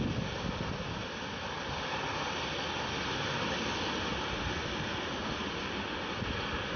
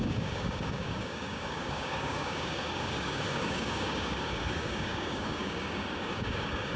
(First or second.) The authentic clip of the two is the first